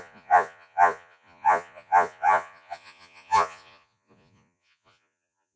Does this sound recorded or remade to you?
remade